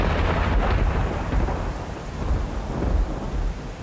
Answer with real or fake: fake